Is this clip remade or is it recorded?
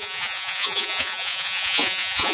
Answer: remade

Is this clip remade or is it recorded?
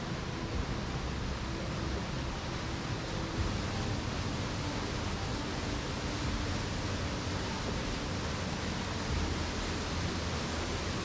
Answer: recorded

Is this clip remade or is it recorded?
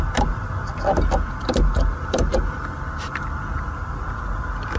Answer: recorded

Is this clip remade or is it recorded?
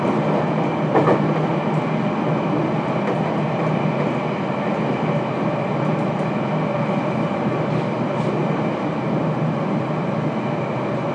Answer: recorded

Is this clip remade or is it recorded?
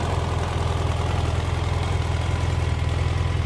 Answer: recorded